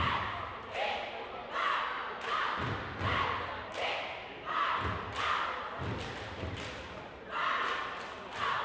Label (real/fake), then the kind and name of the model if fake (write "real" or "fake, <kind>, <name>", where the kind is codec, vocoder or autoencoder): real